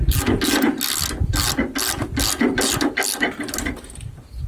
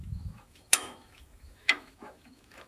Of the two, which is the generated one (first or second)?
second